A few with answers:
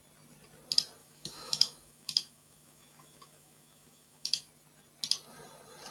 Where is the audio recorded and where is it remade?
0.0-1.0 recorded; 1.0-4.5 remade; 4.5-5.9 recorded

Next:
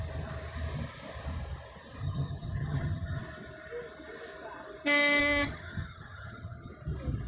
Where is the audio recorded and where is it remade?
0.0-2.0 recorded; 2.0-3.2 remade; 3.2-5.2 recorded; 5.2-6.7 remade; 6.7-7.3 recorded

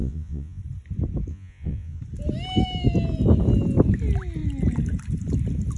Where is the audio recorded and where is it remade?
0.0-0.6 remade; 0.6-1.3 recorded; 1.3-2.0 remade; 2.0-5.8 recorded

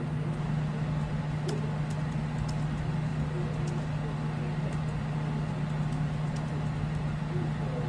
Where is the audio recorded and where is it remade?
0.0-7.9 recorded